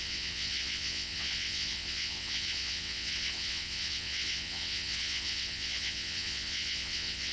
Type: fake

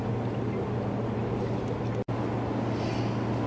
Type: real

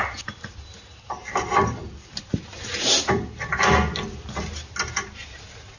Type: real